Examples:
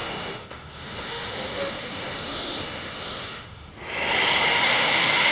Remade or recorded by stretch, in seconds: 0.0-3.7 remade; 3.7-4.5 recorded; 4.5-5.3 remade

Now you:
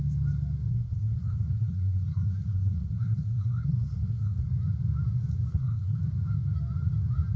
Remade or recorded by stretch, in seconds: 0.0-0.7 recorded; 0.7-4.5 remade; 4.5-5.5 recorded; 5.5-6.0 remade; 6.0-7.4 recorded

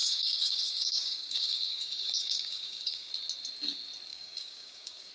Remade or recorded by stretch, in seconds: 0.0-3.1 remade; 3.1-4.1 recorded; 4.1-5.1 remade

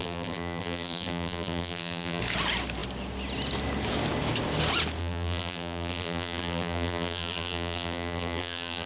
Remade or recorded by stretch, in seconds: 0.0-2.2 remade; 2.2-5.0 recorded; 5.0-8.9 remade

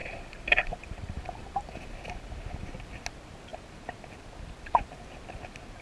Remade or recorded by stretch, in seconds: 0.0-2.7 remade; 2.7-5.8 recorded

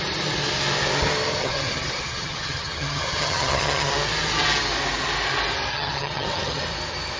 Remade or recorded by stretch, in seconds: 0.0-1.4 recorded; 1.4-3.9 remade; 3.9-5.7 recorded; 5.7-6.6 remade; 6.6-7.2 recorded